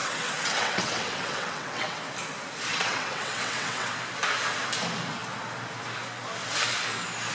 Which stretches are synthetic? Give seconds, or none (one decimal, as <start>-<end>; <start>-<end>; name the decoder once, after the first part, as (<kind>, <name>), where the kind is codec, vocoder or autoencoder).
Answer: 0.0-2.0 (vocoder, WaveNeXt); 2.7-3.9